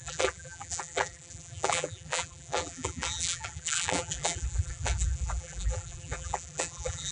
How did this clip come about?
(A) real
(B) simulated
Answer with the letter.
B